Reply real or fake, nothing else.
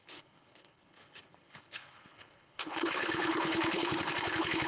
fake